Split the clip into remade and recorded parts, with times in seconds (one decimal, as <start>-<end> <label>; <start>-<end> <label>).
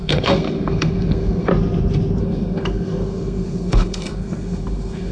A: 0.0-1.5 remade; 1.5-2.2 recorded; 2.2-5.1 remade